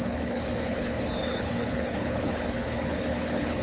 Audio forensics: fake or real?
fake